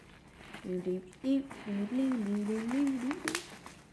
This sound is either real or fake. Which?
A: real